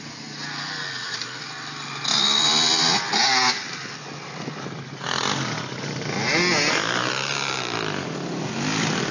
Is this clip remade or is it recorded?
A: recorded